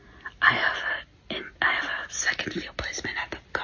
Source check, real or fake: real